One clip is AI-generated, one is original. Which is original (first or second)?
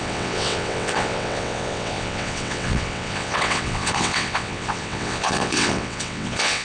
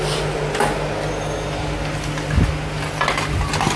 second